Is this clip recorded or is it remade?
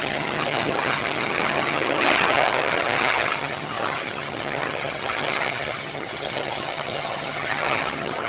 remade